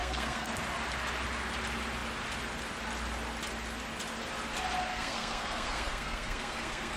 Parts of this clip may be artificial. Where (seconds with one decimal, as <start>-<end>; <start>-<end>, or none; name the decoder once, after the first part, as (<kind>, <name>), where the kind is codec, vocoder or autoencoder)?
0.0-0.5 (codec, SNAC); 4.9-7.0